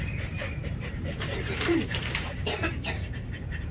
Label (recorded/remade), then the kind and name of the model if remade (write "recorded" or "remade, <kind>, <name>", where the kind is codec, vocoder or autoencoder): remade, vocoder, BigVGAN v2